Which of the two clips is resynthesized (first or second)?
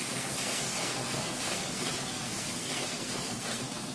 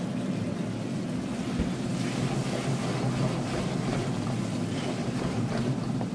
first